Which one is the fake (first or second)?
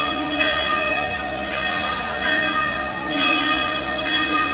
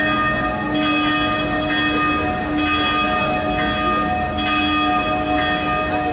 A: first